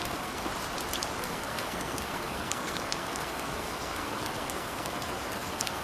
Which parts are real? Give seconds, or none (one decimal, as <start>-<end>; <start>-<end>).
0.5-1.2